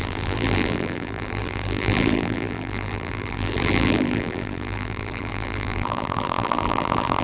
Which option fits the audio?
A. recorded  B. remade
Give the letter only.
B